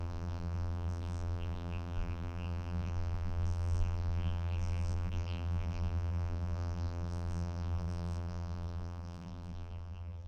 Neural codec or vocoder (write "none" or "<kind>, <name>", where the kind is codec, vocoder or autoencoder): vocoder, BigVGAN v2